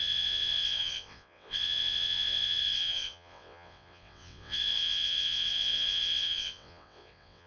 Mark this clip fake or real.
fake